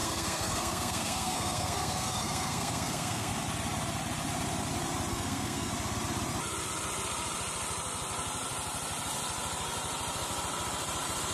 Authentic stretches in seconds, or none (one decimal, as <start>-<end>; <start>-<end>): 3.3-5.1; 5.7-11.3